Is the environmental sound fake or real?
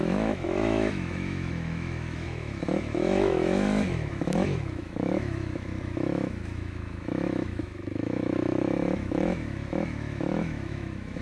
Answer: fake